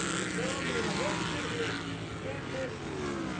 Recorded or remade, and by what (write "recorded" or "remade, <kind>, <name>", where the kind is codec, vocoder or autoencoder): recorded